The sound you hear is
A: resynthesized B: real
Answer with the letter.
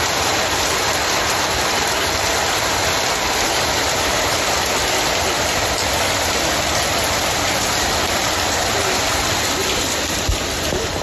A